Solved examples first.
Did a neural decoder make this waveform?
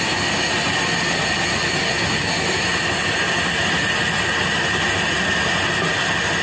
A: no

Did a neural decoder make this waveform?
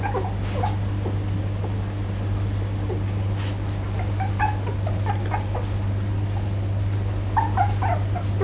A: no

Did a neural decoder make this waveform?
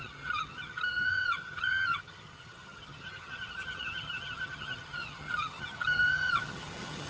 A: yes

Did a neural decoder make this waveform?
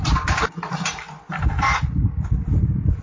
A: no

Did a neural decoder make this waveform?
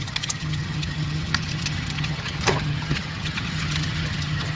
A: yes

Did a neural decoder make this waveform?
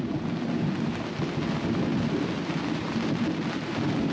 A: no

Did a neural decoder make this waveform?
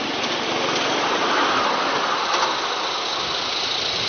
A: no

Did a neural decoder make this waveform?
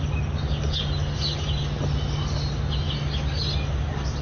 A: no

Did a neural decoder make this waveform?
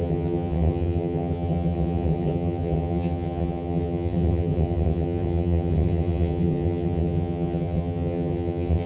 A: yes